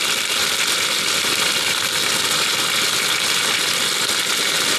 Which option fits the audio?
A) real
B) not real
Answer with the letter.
B